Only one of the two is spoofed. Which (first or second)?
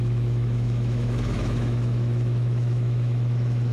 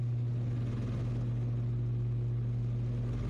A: first